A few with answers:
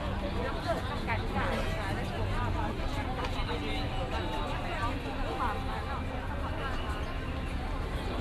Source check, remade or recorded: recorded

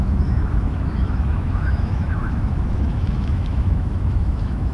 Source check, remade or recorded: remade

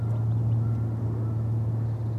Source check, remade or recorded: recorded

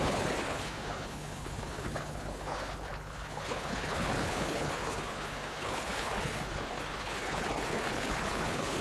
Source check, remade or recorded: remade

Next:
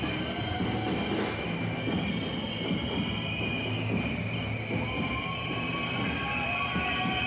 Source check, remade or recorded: recorded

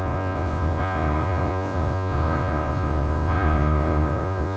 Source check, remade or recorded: remade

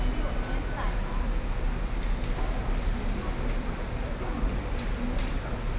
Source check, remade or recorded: recorded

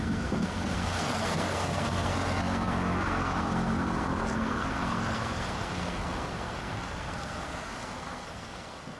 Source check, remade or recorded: remade